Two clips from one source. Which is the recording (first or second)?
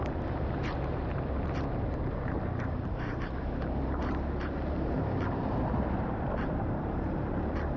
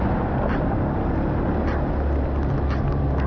second